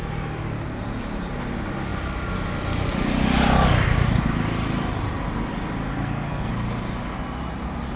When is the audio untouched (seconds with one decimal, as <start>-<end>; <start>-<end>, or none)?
0.0-5.9; 6.5-8.0